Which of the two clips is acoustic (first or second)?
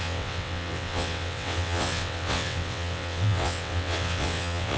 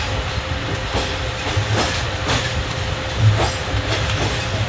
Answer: second